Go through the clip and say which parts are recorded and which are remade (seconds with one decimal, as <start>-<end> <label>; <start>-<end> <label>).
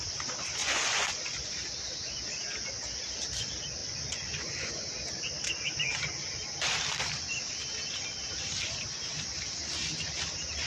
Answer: 0.0-0.6 recorded; 0.6-1.1 remade; 1.1-3.8 recorded; 3.8-4.7 remade; 4.7-10.7 recorded